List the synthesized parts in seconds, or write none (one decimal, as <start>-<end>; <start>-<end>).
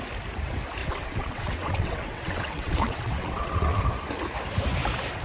0.8-3.8